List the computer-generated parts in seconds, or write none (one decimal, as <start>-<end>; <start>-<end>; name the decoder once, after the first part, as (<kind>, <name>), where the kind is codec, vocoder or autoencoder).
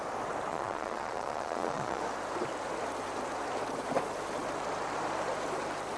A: 0.5-2.0 (vocoder, Vocos)